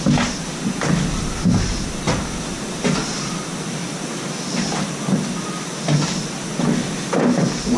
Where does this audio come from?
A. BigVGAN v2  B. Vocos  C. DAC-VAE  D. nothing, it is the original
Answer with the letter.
D